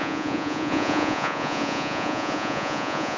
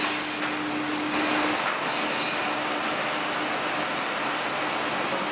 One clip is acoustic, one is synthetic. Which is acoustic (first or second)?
second